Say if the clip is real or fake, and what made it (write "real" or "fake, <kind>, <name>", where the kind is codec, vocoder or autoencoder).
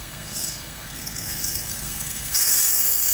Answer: fake, codec, SNAC